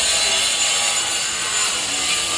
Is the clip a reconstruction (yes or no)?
no